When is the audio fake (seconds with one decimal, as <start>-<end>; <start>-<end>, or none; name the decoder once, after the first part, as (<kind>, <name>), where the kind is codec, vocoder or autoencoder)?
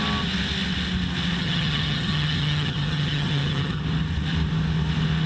1.4-3.8 (vocoder, HiFi-GAN)